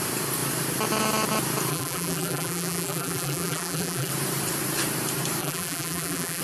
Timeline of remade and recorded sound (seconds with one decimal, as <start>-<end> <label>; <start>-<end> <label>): 0.0-1.7 recorded; 1.7-4.1 remade; 4.1-5.4 recorded; 5.4-6.4 remade